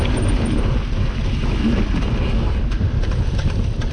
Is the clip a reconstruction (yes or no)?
no